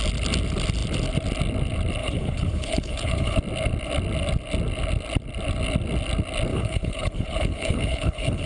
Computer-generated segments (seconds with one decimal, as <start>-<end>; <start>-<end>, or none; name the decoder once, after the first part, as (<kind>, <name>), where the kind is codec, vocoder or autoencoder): 2.0-3.4 (codec, HILCodec); 6.5-8.5

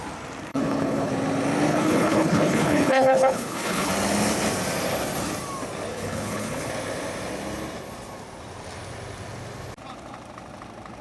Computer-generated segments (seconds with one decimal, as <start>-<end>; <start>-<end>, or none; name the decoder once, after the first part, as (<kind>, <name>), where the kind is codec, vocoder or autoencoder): 0.5-1.1 (codec, HILCodec); 1.7-3.9; 5.9-6.7

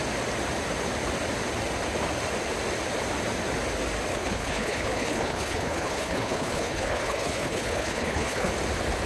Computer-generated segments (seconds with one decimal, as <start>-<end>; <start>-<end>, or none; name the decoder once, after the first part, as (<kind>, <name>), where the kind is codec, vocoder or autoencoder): 4.1-8.5 (codec, HILCodec)

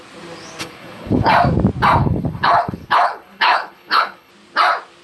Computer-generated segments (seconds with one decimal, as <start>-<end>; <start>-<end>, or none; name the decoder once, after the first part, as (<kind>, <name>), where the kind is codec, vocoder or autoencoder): 0.6-1.3 (codec, HILCodec); 2.0-4.3

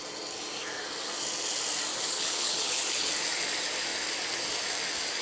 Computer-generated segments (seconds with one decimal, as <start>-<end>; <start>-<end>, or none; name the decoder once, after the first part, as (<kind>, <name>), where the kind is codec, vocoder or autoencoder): 1.9-3.1 (codec, HILCodec)